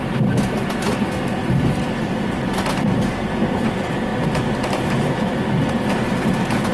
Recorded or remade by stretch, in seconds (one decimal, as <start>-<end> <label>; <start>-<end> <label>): 0.0-6.7 recorded